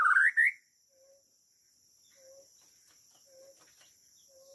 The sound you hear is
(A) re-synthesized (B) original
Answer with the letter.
B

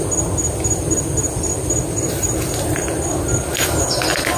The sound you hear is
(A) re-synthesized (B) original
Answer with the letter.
B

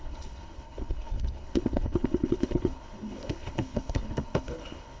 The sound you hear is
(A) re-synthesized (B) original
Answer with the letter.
A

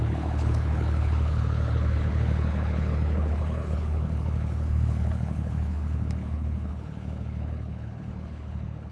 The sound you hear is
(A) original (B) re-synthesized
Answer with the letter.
B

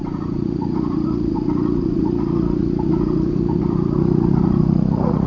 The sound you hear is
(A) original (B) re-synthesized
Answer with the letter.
B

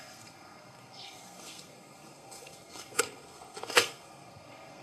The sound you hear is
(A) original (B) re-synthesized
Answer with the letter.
B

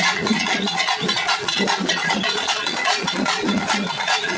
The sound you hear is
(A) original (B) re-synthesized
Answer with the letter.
B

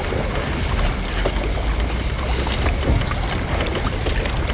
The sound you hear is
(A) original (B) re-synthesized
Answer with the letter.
A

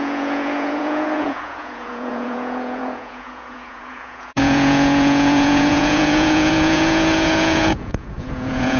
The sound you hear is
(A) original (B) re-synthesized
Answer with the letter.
B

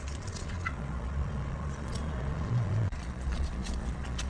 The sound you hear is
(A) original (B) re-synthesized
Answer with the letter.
B